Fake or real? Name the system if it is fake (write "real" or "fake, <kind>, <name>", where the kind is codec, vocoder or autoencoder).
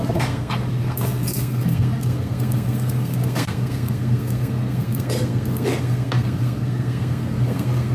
fake, codec, SNAC